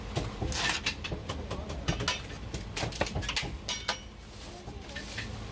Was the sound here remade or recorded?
recorded